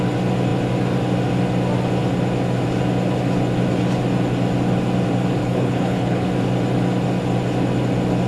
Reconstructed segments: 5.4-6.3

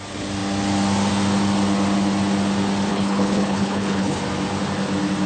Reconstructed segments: 2.9-4.2

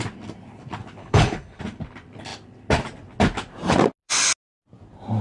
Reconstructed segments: 1.0-1.6

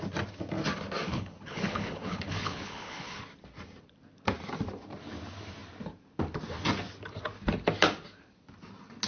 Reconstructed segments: 1.1-3.2

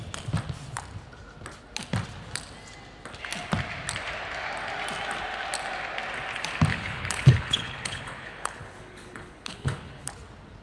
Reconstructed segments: 6.7-10.1

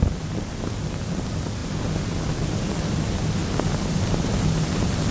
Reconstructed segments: none

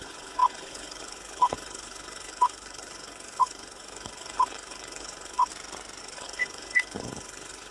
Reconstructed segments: 0.0-5.5; 6.0-7.7

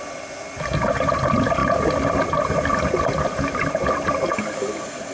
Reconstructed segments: none